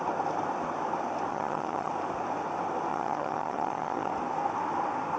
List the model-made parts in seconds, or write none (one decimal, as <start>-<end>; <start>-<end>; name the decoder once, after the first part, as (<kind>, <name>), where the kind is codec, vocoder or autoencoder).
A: 1.3-1.9 (vocoder, HiFi-GAN); 2.9-4.1